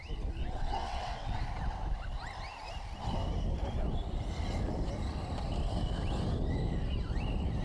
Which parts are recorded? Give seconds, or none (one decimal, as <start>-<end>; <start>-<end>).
0.0-0.4; 1.4-7.6